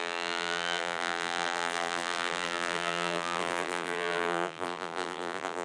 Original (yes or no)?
no